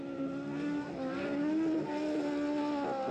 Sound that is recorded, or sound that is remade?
recorded